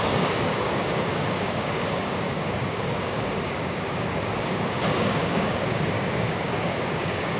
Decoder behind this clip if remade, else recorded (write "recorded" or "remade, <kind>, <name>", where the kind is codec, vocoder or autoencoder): remade, codec, DAC